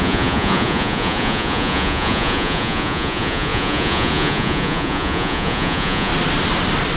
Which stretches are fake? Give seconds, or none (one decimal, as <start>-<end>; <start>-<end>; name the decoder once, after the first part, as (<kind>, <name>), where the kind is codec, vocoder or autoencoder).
0.0-6.1 (vocoder, Vocos)